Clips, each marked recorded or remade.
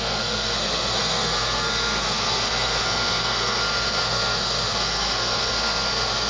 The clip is remade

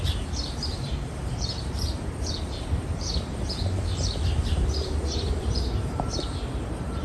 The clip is remade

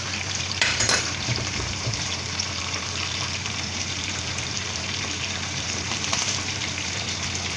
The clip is remade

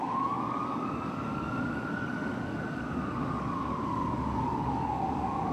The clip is remade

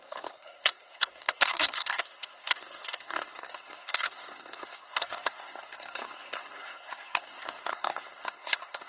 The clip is remade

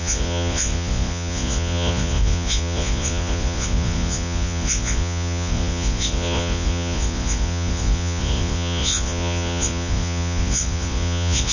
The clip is remade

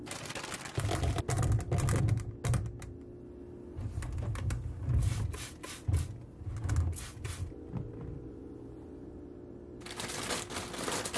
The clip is recorded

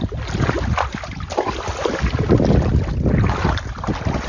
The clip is recorded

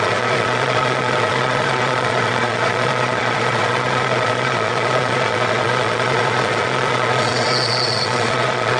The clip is remade